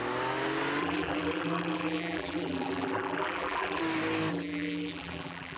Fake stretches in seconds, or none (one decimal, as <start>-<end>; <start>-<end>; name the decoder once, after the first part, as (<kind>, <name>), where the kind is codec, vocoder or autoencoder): 0.8-3.8 (vocoder, BigVGAN v2); 4.3-5.6

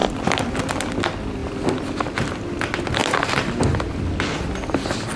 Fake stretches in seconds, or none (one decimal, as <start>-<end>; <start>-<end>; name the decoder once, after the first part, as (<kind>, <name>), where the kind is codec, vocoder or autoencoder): 3.0-3.6 (vocoder, BigVGAN v2)

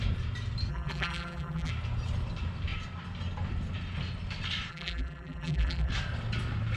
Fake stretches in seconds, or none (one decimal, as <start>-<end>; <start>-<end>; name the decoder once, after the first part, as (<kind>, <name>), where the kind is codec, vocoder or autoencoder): 0.7-1.7 (vocoder, BigVGAN v2); 4.7-5.9

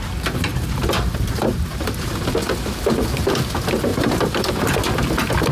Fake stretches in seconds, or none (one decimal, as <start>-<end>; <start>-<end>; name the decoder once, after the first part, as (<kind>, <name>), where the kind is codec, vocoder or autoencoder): 0.5-2.3 (vocoder, BigVGAN v2); 3.9-4.5

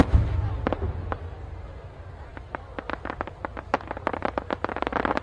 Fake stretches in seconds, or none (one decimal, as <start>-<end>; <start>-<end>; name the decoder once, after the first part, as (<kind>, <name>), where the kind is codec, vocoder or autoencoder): none

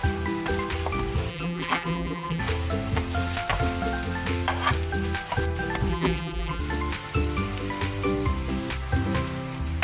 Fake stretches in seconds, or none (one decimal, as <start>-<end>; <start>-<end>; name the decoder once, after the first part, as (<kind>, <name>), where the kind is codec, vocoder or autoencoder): 1.3-2.4 (vocoder, BigVGAN v2); 5.9-6.6